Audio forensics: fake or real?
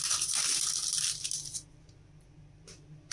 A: real